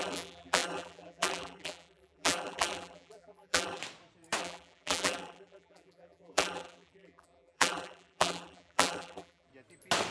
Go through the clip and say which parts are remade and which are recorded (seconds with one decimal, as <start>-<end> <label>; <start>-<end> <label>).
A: 0.0-3.8 remade; 3.8-4.4 recorded; 4.4-9.5 remade; 9.5-10.1 recorded